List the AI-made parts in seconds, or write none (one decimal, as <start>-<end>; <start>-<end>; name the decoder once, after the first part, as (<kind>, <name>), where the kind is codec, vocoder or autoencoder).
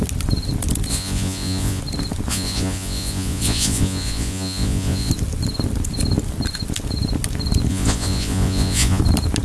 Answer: 0.9-1.8 (vocoder, Vocos); 2.3-5.1; 7.7-9.0